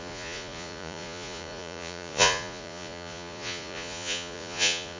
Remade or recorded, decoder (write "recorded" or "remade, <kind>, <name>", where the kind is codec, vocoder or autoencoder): remade, vocoder, Vocos